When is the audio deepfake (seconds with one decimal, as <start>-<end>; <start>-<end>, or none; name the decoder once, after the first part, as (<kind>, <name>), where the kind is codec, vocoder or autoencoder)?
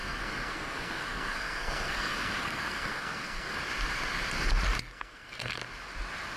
0.0-3.6 (codec, SNAC); 4.8-5.6